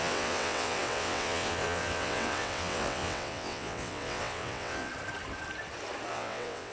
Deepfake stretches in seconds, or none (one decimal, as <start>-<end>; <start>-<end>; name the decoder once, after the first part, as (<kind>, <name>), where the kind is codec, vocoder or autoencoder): 0.0-4.9 (vocoder, WaveNeXt); 6.1-6.7